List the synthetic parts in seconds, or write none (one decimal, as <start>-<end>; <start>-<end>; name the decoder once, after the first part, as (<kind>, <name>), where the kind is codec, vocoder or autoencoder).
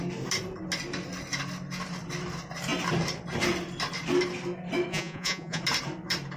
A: 4.9-5.6 (vocoder, Vocos)